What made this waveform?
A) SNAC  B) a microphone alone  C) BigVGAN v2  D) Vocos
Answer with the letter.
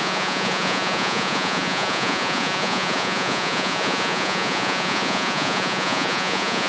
D